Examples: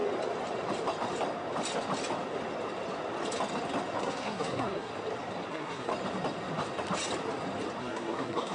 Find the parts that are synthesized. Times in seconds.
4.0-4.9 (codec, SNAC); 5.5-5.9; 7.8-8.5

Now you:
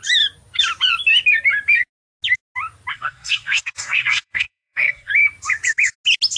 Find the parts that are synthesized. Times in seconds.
2.9-5.1 (codec, SNAC)

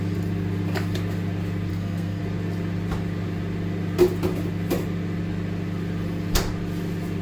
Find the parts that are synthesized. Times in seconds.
1.7-2.2 (codec, SNAC)

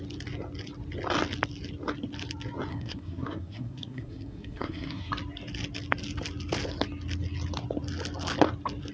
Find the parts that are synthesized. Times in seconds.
2.7-5.1 (codec, SNAC)

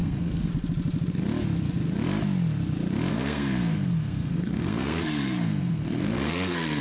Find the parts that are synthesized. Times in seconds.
0.0-0.5 (codec, SNAC); 3.1-6.8

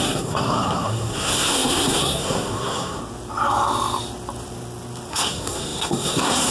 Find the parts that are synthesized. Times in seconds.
0.0-3.0 (codec, SNAC); 5.1-6.5

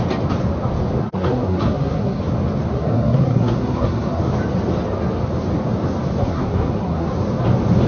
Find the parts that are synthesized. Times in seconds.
1.0-2.2 (codec, SNAC); 2.7-4.2; 6.2-7.1

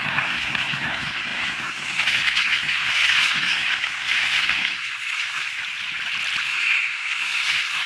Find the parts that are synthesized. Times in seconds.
0.0-5.5 (codec, SNAC); 6.4-7.9